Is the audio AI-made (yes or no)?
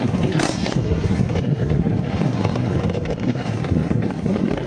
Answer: yes